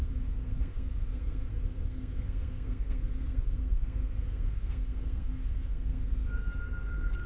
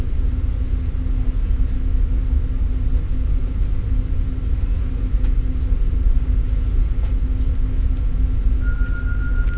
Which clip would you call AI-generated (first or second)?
first